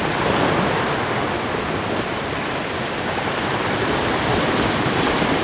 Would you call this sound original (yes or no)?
yes